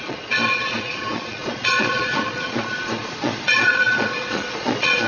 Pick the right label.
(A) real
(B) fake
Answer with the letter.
B